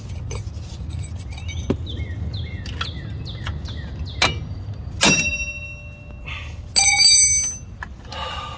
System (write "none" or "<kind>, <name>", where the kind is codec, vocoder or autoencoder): none